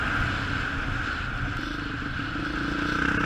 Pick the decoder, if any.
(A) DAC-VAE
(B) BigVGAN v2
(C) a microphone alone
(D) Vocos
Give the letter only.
C